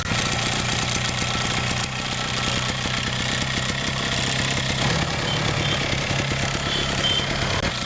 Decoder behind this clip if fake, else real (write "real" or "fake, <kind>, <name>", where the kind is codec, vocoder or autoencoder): real